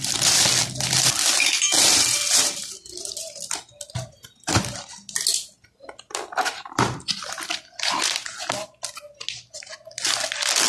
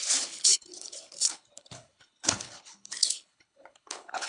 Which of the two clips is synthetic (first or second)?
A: second